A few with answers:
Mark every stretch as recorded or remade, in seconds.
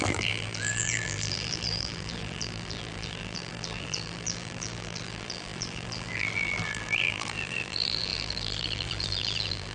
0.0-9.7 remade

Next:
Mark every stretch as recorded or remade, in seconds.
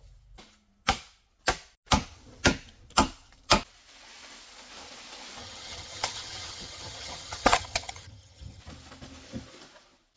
0.0-5.4 recorded; 5.4-8.6 remade; 8.6-10.2 recorded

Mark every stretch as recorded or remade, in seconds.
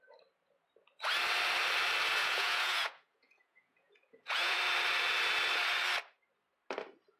0.0-2.2 recorded; 2.2-4.6 remade; 4.6-7.2 recorded